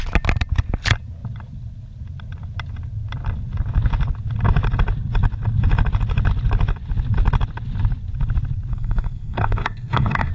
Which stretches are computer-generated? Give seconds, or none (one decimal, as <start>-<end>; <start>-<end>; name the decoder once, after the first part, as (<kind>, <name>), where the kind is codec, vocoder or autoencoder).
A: 8.7-10.3 (codec, SNAC)